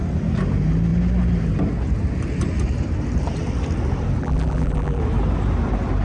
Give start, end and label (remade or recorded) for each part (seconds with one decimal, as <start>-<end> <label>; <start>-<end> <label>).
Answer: 0.0-4.2 recorded; 4.2-5.0 remade; 5.0-6.0 recorded